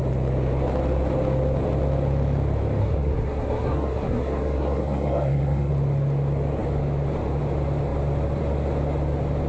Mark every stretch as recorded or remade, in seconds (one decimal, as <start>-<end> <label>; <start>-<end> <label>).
0.0-2.8 recorded; 2.8-5.7 remade; 5.7-9.5 recorded